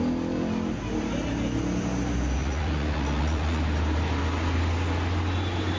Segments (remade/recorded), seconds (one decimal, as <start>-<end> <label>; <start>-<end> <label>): 0.0-2.4 recorded; 2.4-3.6 remade; 3.6-5.8 recorded